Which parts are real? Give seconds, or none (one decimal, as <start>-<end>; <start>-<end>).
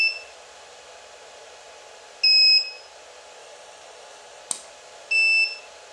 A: 0.0-3.4; 4.4-5.9